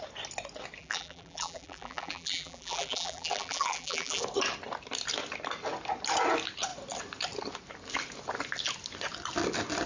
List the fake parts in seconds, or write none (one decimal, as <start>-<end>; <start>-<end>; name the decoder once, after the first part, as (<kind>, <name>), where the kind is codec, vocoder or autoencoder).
0.8-4.2 (vocoder, BigVGAN v2)